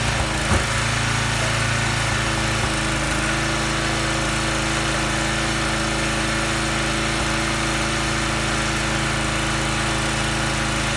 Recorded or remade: recorded